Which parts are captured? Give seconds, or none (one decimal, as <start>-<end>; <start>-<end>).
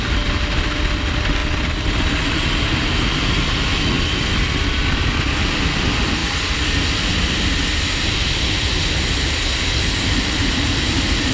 0.0-11.3